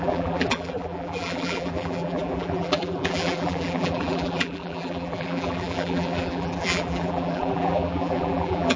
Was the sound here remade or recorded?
remade